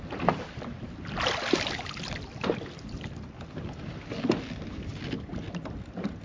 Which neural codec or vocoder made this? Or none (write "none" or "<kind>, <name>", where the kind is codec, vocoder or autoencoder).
none